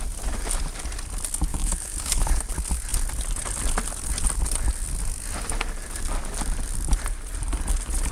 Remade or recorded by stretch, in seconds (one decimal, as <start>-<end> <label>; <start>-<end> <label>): 0.0-1.5 recorded; 1.5-2.3 remade; 2.3-8.1 recorded